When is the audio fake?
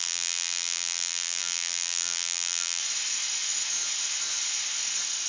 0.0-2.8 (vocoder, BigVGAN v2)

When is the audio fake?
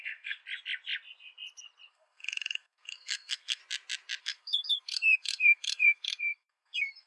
0.0-0.4 (codec, SNAC); 1.9-3.6; 4.2-7.1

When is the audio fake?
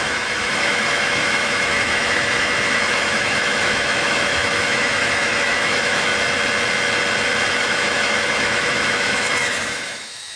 0.0-6.1 (autoencoder, DAC-VAE); 7.5-10.4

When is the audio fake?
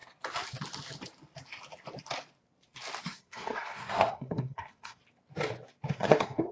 3.0-5.0 (codec, SNAC); 5.9-6.5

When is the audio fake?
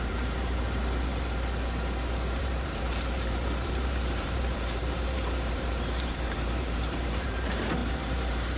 0.0-1.1 (vocoder, BigVGAN v2); 2.4-8.6